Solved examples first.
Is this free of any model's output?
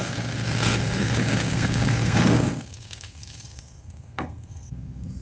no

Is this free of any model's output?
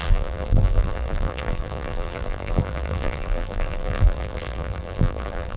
no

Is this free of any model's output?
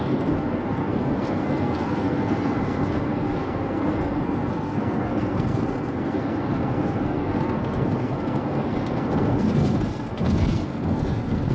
no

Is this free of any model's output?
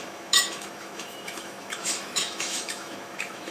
no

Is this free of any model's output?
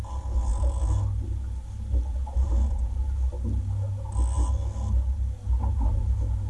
yes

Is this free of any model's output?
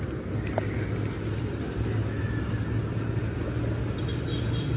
yes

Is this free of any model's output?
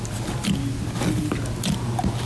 yes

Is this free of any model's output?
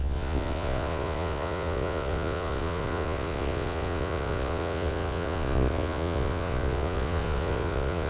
no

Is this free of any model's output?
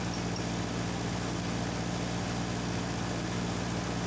yes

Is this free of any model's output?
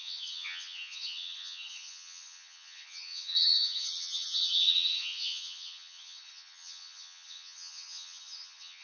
no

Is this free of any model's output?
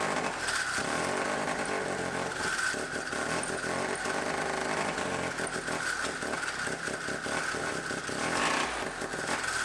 yes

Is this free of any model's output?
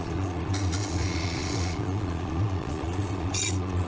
no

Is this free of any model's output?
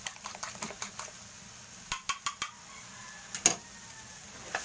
yes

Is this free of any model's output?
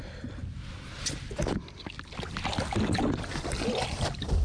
yes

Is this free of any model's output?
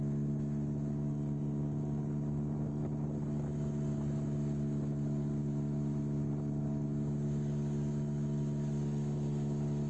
yes